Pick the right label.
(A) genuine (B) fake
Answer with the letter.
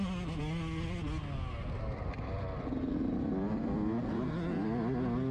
A